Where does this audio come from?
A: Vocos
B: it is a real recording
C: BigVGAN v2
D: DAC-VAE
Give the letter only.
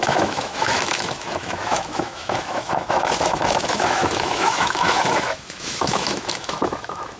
D